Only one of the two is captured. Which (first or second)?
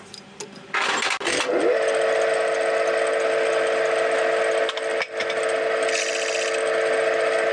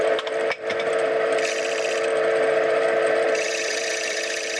first